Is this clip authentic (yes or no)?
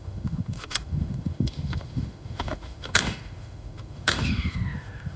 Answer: no